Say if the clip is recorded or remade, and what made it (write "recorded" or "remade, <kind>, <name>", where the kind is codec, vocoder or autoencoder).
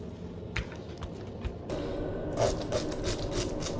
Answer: recorded